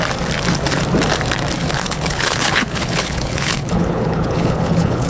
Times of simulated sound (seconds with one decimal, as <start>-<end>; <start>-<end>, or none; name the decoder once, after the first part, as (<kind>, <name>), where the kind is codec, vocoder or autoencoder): 1.6-5.1 (codec, HILCodec)